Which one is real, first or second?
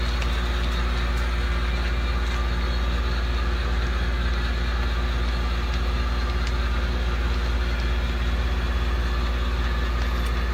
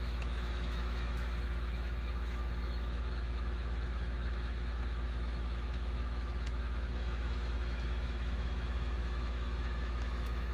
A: first